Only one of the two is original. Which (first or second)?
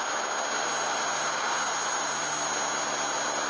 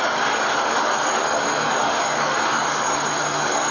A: first